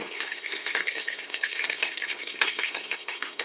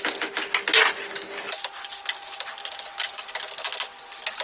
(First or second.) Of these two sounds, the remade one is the first